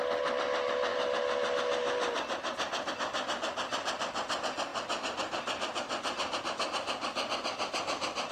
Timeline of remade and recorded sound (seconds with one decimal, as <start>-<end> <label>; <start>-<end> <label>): 0.0-8.3 recorded